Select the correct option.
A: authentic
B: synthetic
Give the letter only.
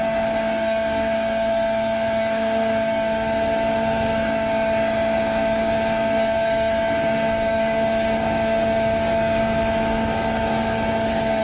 B